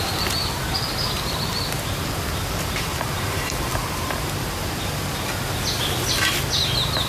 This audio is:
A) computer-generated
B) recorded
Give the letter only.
B